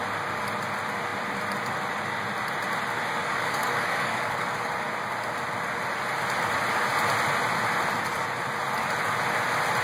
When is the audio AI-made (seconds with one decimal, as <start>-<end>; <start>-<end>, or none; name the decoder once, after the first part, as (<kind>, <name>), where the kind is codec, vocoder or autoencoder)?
3.2-4.7 (codec, DAC)